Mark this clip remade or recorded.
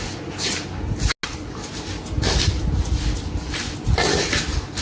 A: recorded